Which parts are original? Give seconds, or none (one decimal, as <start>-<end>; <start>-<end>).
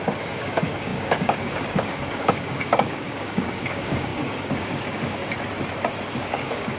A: 5.2-6.2